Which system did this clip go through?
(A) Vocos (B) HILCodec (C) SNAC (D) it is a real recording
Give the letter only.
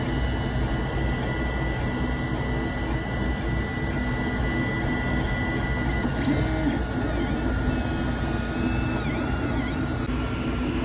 D